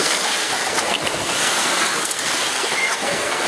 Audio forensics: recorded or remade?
remade